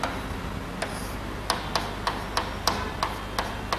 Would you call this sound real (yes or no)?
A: yes